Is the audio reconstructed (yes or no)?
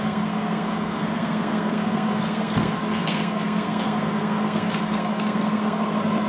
yes